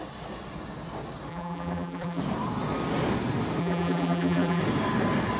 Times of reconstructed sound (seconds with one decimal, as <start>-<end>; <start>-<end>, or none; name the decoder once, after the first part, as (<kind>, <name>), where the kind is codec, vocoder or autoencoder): 1.3-2.2 (vocoder, BigVGAN v2); 3.6-4.6